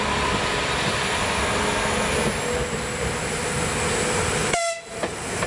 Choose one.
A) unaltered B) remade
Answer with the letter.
A